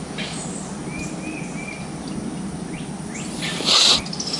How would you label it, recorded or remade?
recorded